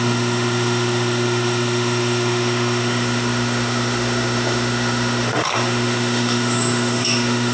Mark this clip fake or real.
fake